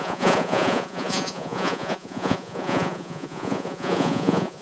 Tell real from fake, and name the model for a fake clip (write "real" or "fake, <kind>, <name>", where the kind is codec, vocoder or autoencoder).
fake, vocoder, Vocos